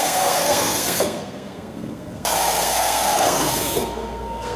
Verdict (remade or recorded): remade